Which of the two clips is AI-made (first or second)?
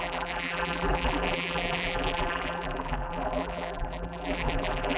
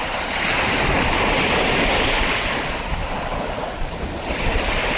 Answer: first